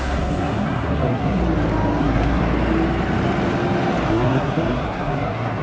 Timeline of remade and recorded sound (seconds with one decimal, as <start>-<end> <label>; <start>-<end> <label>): 0.0-1.4 remade; 1.4-2.0 recorded; 2.0-2.4 remade; 2.4-4.1 recorded; 4.1-5.6 remade